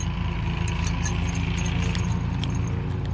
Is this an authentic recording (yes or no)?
yes